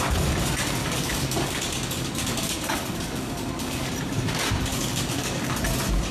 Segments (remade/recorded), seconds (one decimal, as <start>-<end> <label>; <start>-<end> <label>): 0.0-0.8 recorded; 0.8-3.9 remade; 3.9-4.7 recorded; 4.7-5.5 remade; 5.5-6.1 recorded